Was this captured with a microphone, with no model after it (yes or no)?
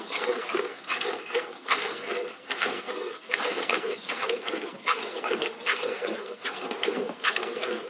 no